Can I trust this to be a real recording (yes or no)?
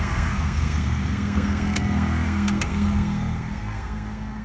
no